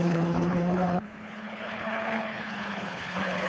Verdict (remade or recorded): remade